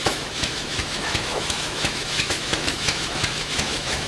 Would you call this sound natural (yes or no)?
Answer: no